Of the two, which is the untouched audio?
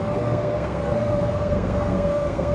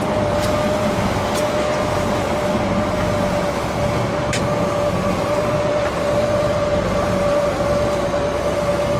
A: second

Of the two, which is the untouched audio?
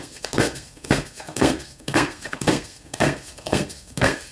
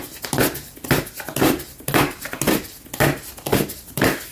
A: second